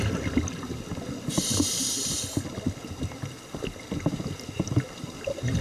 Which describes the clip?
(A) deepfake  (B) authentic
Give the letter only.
B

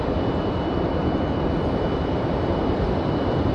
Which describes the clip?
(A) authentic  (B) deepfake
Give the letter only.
B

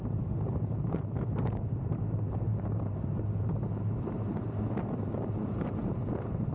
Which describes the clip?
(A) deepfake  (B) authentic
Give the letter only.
A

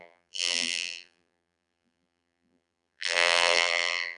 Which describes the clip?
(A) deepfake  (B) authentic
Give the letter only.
A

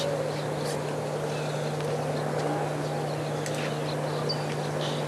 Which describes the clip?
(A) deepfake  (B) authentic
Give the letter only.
B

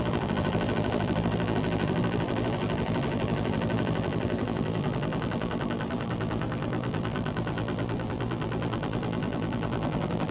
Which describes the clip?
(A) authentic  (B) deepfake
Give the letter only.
B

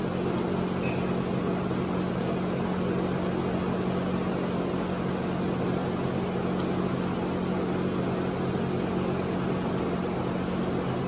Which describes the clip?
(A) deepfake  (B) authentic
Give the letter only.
B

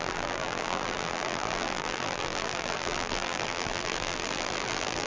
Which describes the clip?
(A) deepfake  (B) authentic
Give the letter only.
A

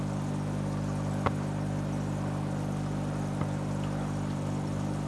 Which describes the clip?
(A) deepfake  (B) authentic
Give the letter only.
B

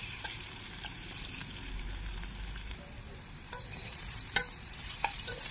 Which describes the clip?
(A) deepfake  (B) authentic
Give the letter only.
A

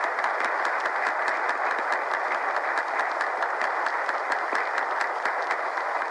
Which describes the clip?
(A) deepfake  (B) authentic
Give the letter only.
B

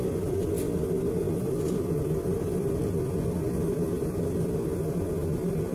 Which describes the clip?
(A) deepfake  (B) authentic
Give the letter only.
B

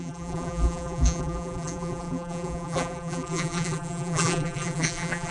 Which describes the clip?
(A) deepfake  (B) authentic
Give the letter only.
A